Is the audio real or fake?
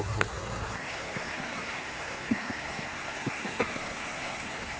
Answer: fake